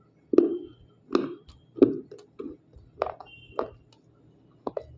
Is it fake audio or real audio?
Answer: real